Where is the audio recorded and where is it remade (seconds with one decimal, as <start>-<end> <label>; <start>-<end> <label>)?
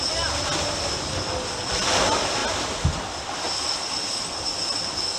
0.0-5.2 recorded